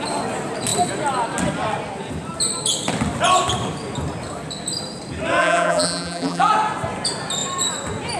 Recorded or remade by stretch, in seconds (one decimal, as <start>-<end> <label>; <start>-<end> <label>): 0.0-5.4 recorded; 5.4-6.5 remade; 6.5-8.2 recorded